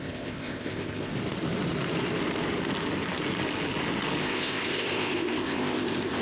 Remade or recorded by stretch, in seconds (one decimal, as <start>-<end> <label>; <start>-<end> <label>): 0.0-1.1 remade; 1.1-4.2 recorded; 4.2-6.2 remade